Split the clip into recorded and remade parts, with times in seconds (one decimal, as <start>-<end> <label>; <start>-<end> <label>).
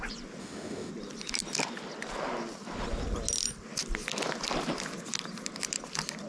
0.0-0.4 recorded; 0.4-0.9 remade; 0.9-6.3 recorded